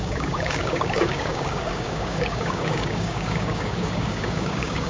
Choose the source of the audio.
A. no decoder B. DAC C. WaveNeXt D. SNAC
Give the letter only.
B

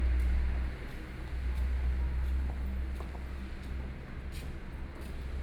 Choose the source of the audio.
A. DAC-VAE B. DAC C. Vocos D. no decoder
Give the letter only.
D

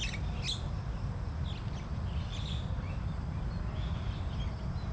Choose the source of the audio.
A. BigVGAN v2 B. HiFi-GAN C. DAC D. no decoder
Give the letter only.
D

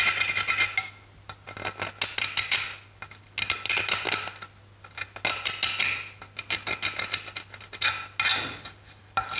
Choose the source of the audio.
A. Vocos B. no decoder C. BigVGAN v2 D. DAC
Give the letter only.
B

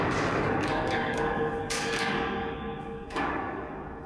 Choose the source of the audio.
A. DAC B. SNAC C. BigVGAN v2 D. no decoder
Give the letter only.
A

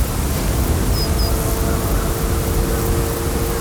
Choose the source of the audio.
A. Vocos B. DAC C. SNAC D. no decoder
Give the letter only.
D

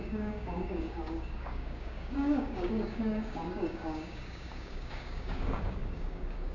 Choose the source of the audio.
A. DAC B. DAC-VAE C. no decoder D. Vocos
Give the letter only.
A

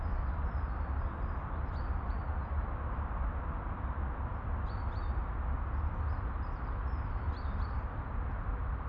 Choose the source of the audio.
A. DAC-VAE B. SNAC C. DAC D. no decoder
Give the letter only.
D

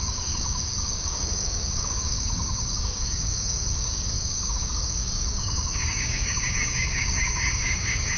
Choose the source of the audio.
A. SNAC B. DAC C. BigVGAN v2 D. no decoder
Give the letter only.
B